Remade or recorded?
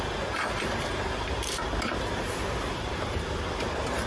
remade